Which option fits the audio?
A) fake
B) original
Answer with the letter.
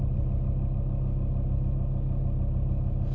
B